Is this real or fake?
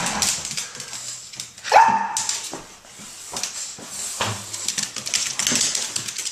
real